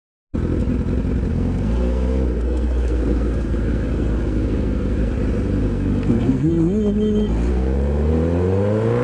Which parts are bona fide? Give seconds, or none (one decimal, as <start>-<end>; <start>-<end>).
0.0-1.3; 5.1-5.6; 6.5-7.5; 8.1-9.0